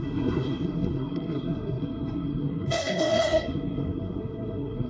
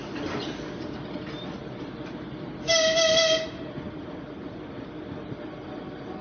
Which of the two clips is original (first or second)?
second